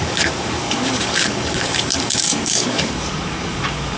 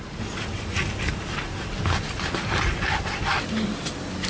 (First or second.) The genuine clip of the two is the second